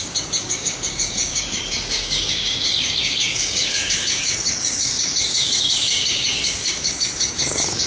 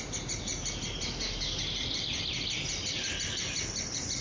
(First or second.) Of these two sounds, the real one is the second